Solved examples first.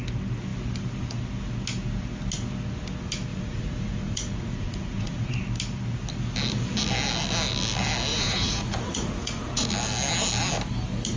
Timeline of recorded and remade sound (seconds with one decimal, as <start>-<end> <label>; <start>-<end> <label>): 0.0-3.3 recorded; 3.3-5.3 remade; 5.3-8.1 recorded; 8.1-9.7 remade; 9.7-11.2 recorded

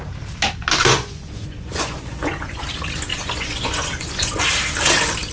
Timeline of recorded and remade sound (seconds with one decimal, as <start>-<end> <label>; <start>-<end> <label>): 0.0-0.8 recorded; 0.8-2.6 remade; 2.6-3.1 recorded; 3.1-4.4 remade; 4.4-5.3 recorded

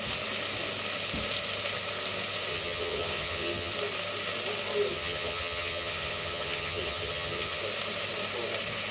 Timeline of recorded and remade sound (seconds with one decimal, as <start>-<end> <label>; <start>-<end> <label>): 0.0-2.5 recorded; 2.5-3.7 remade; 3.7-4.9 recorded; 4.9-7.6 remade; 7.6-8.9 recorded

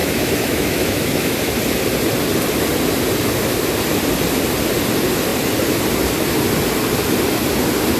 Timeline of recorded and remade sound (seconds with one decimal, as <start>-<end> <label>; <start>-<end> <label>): 0.0-1.3 remade; 1.3-8.0 recorded

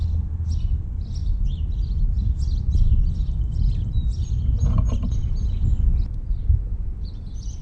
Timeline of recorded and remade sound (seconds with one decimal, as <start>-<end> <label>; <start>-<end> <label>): 0.0-3.2 recorded; 3.2-4.8 remade; 4.8-7.6 recorded

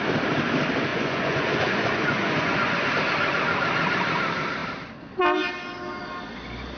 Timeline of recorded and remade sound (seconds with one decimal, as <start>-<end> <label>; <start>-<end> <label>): 0.0-0.9 recorded; 0.9-2.9 remade; 2.9-6.8 recorded